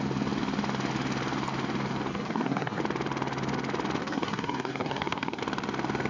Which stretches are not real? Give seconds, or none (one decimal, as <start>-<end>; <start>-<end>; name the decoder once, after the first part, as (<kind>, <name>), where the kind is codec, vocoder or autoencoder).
2.1-2.8 (codec, SNAC); 4.0-5.4